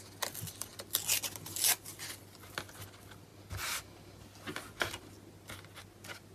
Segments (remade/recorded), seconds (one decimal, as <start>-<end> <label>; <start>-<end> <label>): 0.0-6.3 recorded